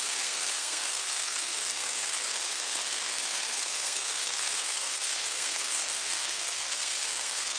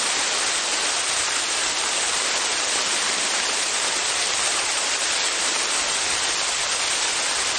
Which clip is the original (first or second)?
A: second